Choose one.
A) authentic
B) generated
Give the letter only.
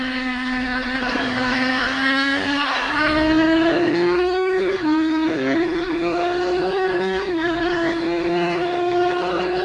B